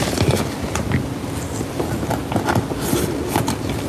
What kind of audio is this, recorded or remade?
recorded